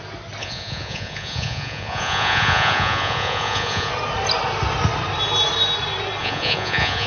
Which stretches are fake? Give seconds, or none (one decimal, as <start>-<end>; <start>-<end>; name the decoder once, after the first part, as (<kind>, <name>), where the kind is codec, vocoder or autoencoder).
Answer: 0.4-3.9 (vocoder, Vocos); 6.2-7.1